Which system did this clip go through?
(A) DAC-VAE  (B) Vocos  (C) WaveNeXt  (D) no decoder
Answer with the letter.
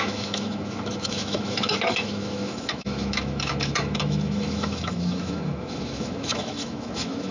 A